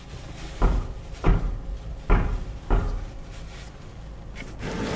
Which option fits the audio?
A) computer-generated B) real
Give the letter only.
B